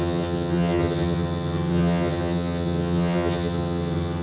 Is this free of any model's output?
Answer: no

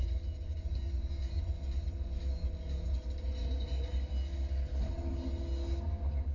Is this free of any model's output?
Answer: yes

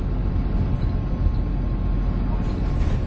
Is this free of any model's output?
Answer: yes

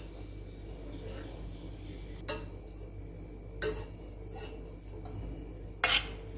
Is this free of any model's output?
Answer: yes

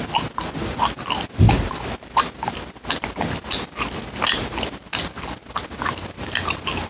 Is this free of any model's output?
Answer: yes